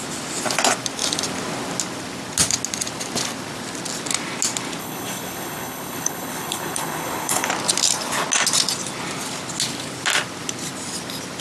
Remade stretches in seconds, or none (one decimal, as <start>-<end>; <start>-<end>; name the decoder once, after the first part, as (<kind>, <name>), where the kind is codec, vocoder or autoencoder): 4.8-7.5 (codec, HILCodec)